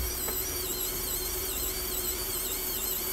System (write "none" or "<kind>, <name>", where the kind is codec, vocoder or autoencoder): vocoder, BigVGAN v2